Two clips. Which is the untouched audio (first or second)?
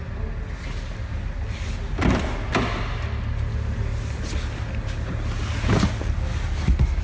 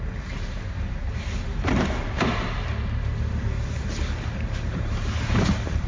first